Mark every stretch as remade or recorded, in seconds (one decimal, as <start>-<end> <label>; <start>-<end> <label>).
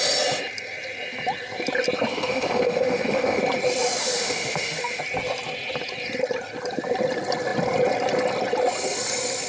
0.0-2.1 recorded; 2.1-3.4 remade; 3.4-4.0 recorded; 4.0-5.0 remade; 5.0-9.5 recorded